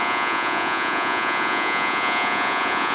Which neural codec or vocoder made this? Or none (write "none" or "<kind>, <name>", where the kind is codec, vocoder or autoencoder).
vocoder, Vocos